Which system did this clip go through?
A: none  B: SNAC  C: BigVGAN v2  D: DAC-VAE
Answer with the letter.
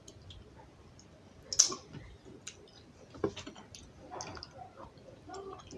A